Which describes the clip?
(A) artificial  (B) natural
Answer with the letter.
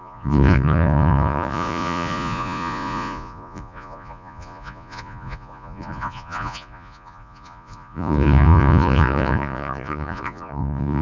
A